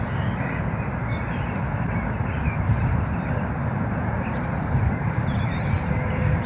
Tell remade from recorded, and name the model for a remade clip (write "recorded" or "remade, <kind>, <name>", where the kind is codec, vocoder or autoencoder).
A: recorded